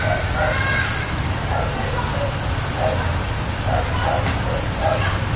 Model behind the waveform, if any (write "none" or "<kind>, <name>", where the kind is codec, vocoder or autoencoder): none